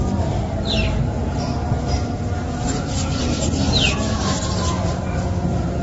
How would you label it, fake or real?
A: real